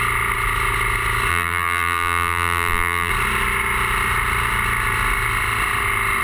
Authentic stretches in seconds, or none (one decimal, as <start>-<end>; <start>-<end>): 0.0-1.3; 3.1-6.2